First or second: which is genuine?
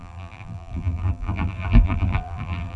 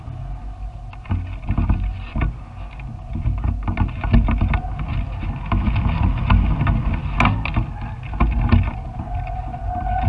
second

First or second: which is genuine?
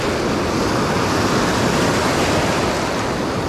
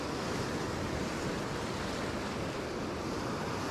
first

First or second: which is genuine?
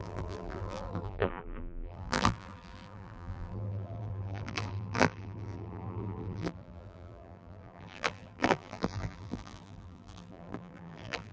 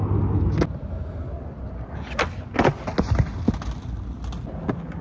second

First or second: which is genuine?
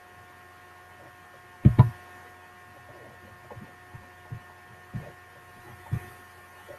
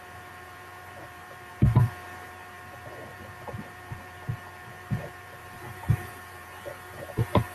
first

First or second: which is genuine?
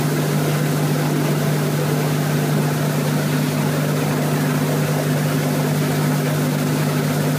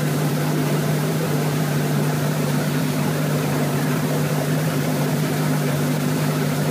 first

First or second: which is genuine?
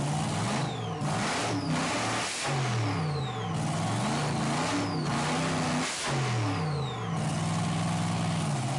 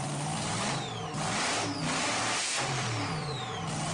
first